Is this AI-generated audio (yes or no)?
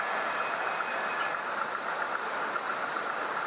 no